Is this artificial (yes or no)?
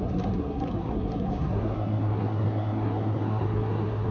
yes